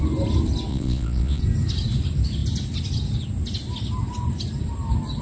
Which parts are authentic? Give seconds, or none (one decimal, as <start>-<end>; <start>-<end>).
0.0-0.7; 1.4-5.2